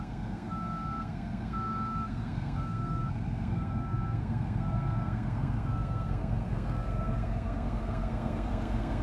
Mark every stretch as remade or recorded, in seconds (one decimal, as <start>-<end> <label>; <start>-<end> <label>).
0.0-9.0 remade

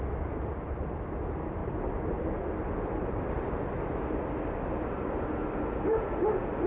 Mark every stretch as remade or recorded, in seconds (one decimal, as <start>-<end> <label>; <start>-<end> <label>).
0.0-6.7 recorded